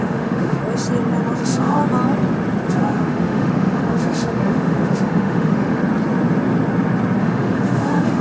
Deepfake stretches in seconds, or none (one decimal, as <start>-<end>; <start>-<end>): 0.0-0.6; 1.4-1.8; 2.7-5.8; 7.2-8.2